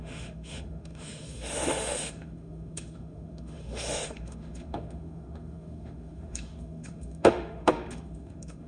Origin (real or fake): fake